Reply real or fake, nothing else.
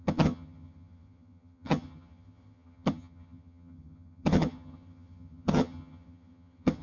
fake